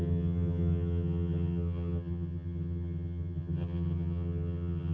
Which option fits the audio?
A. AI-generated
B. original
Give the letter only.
A